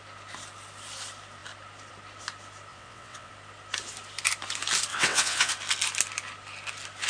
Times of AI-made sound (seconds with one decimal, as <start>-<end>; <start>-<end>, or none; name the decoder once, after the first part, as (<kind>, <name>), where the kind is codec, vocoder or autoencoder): 2.7-3.3 (vocoder, WaveNeXt); 4.9-5.5